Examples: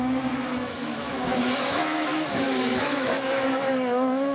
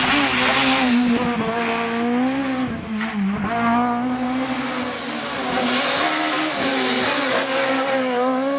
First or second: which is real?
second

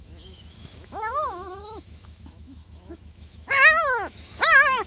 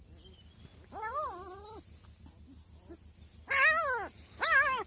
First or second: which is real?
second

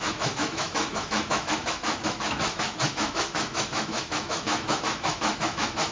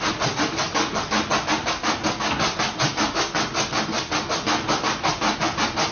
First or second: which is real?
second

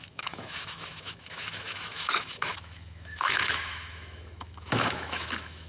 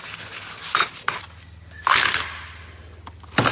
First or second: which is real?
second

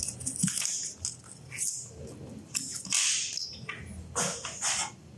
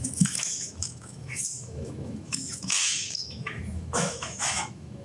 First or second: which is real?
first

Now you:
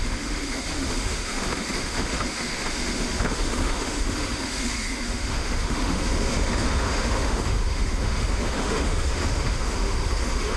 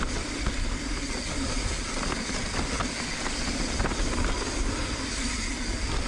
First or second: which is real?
second